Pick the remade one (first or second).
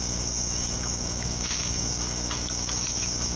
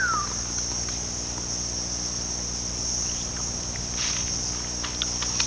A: first